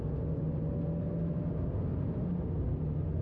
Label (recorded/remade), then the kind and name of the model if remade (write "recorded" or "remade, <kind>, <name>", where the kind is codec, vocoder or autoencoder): recorded